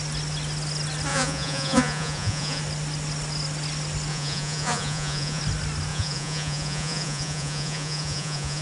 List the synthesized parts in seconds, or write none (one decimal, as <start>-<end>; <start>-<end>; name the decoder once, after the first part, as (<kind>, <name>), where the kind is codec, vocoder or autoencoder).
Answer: 1.1-2.6 (vocoder, Vocos); 4.1-5.4; 5.9-8.6